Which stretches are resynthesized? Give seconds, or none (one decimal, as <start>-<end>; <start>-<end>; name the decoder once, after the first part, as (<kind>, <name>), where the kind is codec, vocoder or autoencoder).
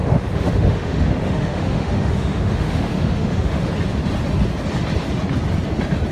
0.0-3.7 (autoencoder, DAC-VAE)